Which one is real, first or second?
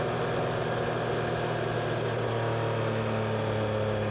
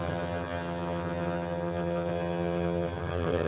first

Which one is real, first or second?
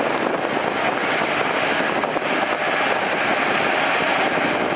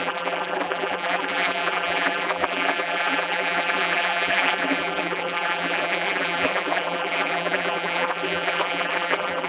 first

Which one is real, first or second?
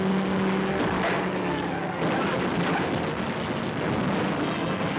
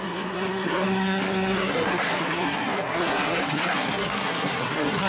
first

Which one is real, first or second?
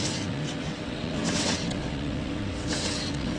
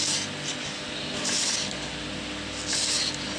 second